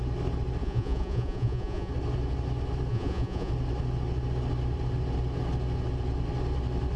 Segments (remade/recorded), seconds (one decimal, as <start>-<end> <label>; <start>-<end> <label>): 0.0-0.6 recorded; 0.6-1.9 remade; 1.9-2.9 recorded; 2.9-3.5 remade; 3.5-7.0 recorded